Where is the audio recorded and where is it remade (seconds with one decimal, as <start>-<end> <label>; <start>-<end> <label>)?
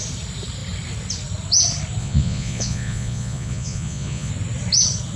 0.0-2.0 recorded; 2.0-4.3 remade; 4.3-5.2 recorded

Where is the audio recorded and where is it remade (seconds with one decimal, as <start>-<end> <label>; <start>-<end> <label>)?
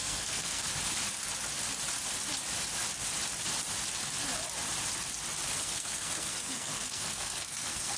0.0-0.7 remade; 0.7-5.5 recorded; 5.5-8.0 remade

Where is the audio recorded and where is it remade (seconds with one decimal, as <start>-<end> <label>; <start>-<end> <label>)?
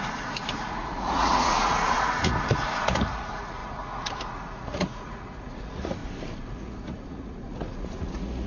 0.0-6.0 remade; 6.0-6.5 recorded; 6.5-8.5 remade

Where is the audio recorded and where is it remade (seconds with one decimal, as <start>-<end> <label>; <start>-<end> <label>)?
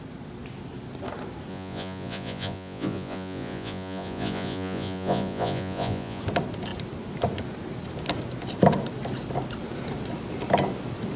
0.0-1.5 recorded; 1.5-6.2 remade; 6.2-11.2 recorded